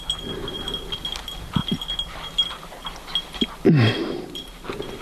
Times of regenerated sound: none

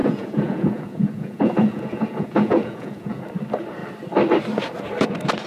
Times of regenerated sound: 0.0-3.2 (vocoder, Vocos)

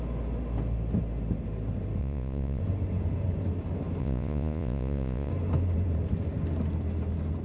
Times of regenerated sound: 2.0-2.6 (vocoder, Vocos); 4.0-5.3

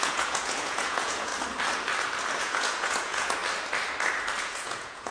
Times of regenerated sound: 0.0-1.3 (vocoder, Vocos); 2.4-3.4; 4.4-5.1

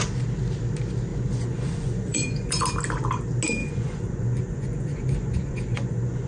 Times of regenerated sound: 1.1-2.6 (vocoder, Vocos); 3.6-6.3

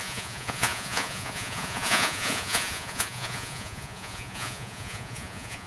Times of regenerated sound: 0.0-5.7 (vocoder, Vocos)